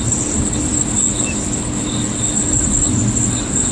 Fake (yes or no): no